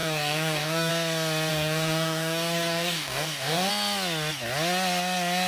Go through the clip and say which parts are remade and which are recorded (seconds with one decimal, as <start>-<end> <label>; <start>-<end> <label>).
0.0-0.9 remade; 0.9-1.5 recorded; 1.5-3.7 remade; 3.7-5.5 recorded